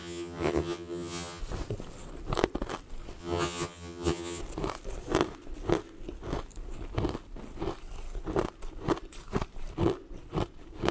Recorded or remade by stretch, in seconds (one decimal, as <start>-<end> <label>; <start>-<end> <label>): 0.0-1.4 remade; 1.4-3.2 recorded; 3.2-4.4 remade; 4.4-10.9 recorded